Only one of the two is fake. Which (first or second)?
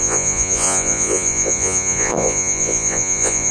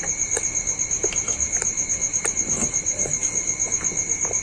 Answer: first